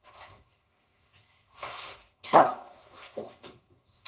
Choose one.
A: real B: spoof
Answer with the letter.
B